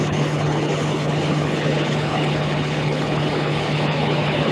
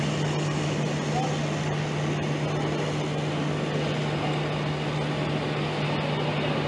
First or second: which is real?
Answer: second